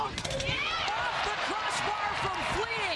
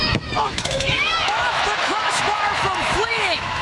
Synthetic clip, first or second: second